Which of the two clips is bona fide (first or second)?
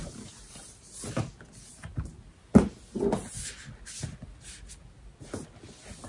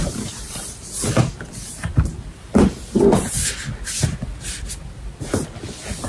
first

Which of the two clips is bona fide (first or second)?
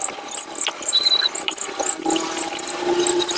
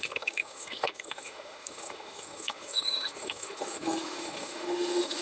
first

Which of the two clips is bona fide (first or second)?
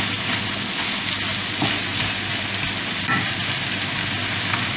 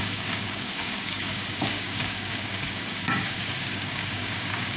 first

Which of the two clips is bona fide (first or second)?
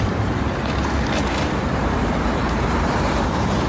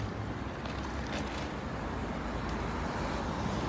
second